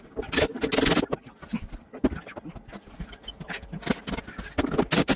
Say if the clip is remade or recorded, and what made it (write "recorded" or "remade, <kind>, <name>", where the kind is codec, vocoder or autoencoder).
recorded